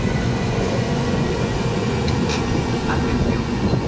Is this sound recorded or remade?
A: remade